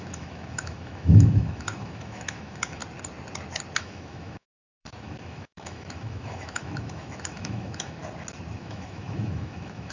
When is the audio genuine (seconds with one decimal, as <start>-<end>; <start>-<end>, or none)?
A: 2.8-3.8; 8.0-8.6

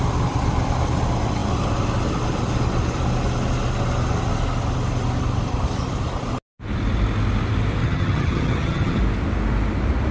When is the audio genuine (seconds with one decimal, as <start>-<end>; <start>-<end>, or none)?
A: 0.0-7.8; 9.0-10.1

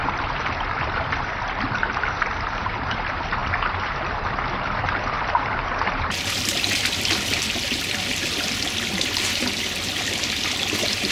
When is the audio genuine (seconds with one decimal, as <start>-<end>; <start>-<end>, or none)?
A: none

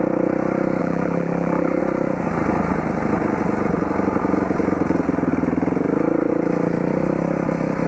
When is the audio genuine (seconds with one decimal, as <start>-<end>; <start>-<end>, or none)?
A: 0.0-0.8; 1.8-7.9